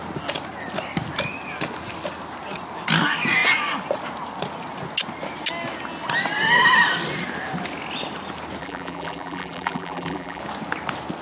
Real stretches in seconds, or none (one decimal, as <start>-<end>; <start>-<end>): 0.0-8.6; 10.4-11.2